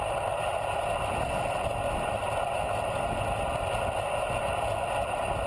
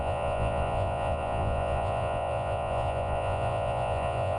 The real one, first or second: first